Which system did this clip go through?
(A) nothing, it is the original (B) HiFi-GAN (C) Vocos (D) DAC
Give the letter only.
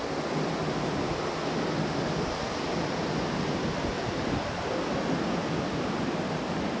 A